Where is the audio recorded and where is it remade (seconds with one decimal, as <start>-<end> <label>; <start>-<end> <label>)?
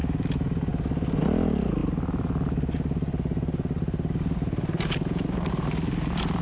0.0-6.4 recorded